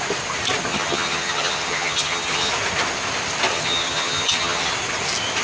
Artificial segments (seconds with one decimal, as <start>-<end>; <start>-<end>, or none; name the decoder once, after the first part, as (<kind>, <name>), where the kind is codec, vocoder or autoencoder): 0.7-2.5 (vocoder, HiFi-GAN); 3.5-4.7